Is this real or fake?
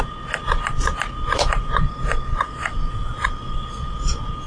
fake